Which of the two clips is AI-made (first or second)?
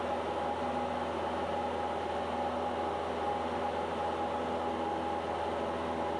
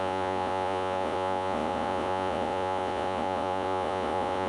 second